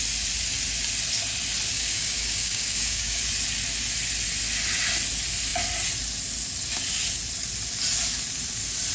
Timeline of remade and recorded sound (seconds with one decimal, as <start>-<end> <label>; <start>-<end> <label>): 0.0-1.7 recorded; 1.7-3.2 remade; 3.2-8.9 recorded